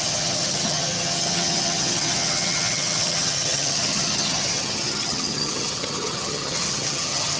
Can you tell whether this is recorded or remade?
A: remade